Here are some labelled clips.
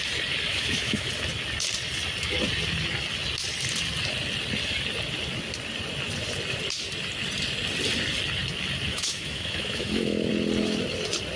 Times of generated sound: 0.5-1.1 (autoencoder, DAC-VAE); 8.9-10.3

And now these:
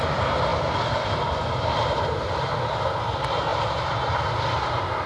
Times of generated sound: 3.5-4.2 (vocoder, BigVGAN v2)

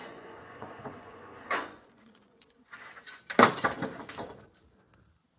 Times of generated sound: 0.0-3.2 (vocoder, Vocos)

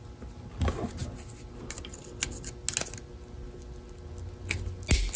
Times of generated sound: none

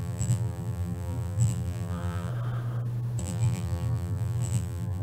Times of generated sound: 0.0-2.3 (vocoder, BigVGAN v2); 3.2-5.0

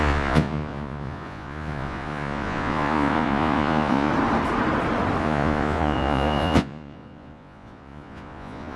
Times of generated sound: 0.0-4.1 (vocoder, Vocos); 5.2-8.8

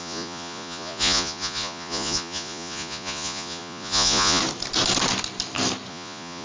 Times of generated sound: 0.0-4.4 (vocoder, Vocos); 5.9-6.4